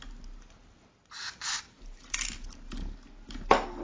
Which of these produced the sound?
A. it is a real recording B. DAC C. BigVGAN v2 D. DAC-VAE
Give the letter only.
A